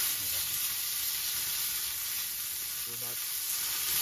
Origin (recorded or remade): recorded